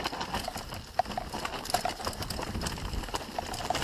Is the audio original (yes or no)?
yes